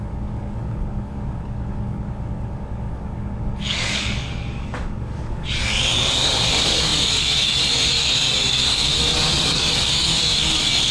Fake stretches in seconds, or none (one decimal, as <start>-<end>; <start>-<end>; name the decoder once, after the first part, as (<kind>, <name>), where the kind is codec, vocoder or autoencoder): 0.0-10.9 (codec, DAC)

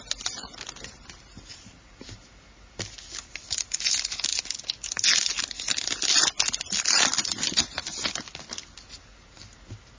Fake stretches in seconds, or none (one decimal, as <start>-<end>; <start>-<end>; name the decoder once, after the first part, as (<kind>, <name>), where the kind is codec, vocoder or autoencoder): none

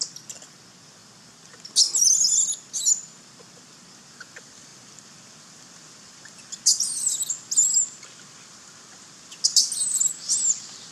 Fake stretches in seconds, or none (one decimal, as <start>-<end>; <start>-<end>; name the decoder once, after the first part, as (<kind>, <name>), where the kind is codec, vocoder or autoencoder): none

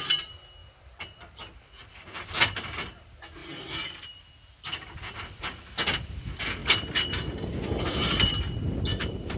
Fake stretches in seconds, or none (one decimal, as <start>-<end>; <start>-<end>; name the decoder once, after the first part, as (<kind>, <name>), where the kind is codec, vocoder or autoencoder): none